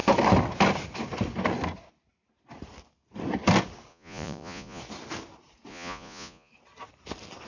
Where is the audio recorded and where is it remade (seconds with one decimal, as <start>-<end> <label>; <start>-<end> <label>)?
0.0-3.9 recorded; 3.9-4.8 remade; 4.8-5.7 recorded; 5.7-6.5 remade; 6.5-7.5 recorded